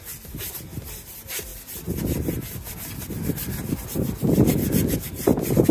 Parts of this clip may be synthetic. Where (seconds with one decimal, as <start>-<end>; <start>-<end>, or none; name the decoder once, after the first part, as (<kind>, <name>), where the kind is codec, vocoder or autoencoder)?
none

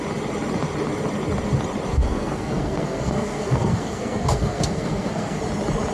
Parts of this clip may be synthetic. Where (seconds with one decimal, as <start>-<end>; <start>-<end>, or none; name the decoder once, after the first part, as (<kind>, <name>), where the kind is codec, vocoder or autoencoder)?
1.9-5.4 (codec, SNAC)

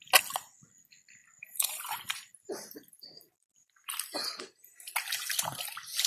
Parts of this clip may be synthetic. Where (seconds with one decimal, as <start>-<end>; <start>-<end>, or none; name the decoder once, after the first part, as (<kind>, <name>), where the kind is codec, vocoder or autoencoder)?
1.2-4.9 (vocoder, BigVGAN v2)

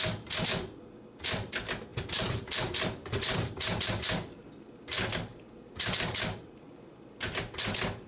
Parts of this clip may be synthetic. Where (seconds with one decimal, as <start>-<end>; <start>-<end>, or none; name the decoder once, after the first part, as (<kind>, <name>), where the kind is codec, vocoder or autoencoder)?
1.9-4.0 (vocoder, BigVGAN v2); 4.4-8.1

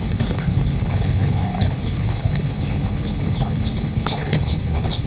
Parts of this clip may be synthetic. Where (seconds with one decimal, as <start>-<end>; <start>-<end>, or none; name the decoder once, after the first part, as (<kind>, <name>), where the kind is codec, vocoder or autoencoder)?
0.0-5.1 (codec, HILCodec)

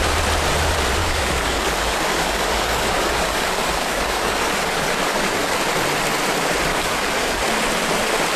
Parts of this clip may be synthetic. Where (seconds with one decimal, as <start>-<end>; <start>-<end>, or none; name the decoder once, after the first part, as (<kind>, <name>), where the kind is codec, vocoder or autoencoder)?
1.0-5.6 (codec, DAC); 6.7-7.4

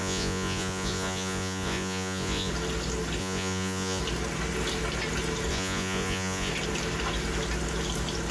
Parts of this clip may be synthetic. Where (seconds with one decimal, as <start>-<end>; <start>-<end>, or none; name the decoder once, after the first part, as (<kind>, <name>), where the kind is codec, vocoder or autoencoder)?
0.0-2.5 (vocoder, Vocos); 3.2-4.0; 5.5-6.5